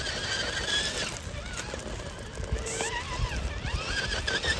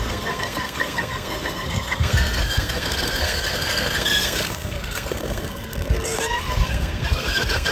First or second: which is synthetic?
second